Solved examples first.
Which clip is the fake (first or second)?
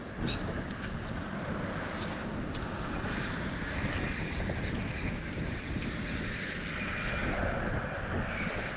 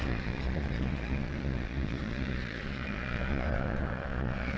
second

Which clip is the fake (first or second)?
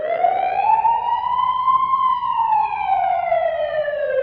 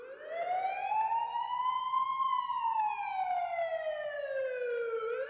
first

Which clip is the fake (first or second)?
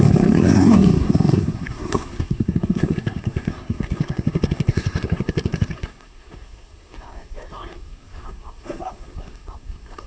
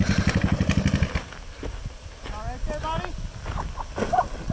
first